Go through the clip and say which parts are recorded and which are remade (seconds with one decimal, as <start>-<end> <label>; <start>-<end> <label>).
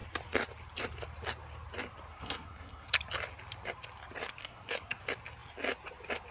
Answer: 0.0-2.1 recorded; 2.1-2.9 remade; 2.9-4.4 recorded; 4.4-5.0 remade; 5.0-6.3 recorded